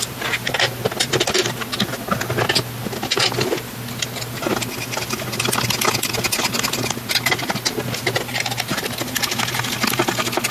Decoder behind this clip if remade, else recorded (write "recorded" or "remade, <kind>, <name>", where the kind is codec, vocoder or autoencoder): recorded